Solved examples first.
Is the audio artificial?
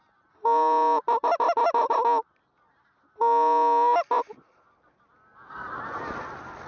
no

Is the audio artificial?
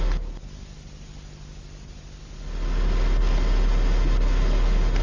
no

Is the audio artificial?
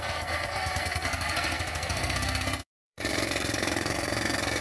yes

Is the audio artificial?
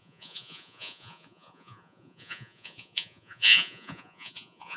yes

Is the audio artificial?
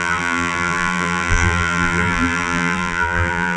yes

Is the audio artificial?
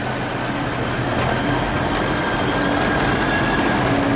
no